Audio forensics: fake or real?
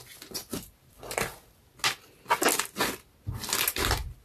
real